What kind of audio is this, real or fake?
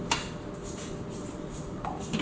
real